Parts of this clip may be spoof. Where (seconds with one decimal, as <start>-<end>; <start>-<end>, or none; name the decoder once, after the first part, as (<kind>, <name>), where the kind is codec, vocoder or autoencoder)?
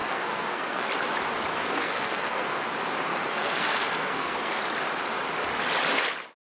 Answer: 0.0-0.9 (codec, SNAC); 1.5-2.6; 3.1-4.6